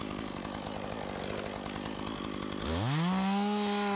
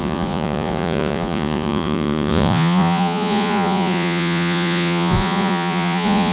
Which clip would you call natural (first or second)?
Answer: first